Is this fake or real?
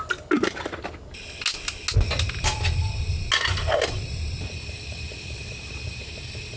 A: real